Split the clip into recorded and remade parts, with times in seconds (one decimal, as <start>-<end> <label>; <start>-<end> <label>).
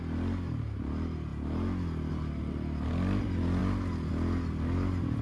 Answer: 0.0-5.2 recorded